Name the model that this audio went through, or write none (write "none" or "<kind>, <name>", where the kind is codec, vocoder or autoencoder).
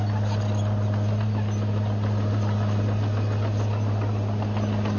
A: none